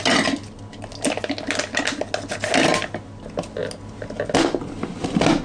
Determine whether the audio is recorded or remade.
recorded